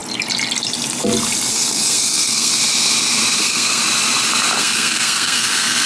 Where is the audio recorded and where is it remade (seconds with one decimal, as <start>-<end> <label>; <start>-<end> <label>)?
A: 0.0-1.5 recorded; 1.5-2.5 remade; 2.5-3.4 recorded; 3.4-3.8 remade; 3.8-4.6 recorded; 4.6-5.9 remade